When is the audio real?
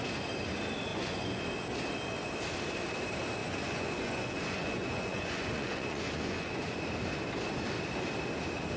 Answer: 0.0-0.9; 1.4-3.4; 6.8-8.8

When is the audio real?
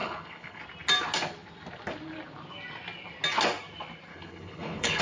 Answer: 0.6-4.1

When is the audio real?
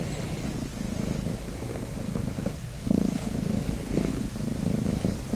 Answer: 0.0-1.7; 4.1-5.4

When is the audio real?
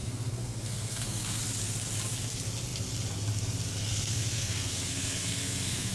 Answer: 1.4-3.9